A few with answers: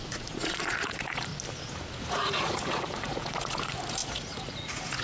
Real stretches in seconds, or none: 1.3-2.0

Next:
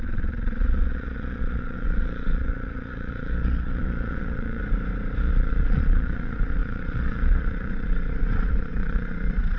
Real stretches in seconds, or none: 4.6-5.2

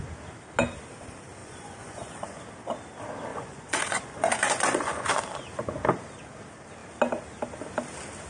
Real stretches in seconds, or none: 0.0-1.4; 2.4-3.3; 5.1-8.3

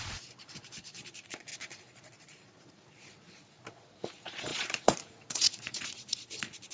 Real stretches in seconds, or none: none

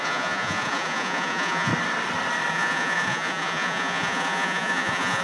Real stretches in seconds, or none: 1.7-2.5

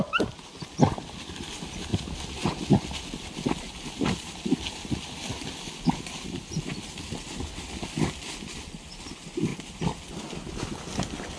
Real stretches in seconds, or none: 0.0-11.4

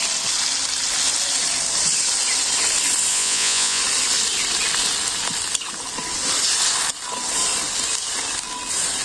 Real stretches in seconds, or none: 0.0-3.1; 3.8-9.0

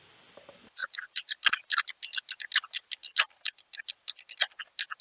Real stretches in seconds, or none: 0.0-5.0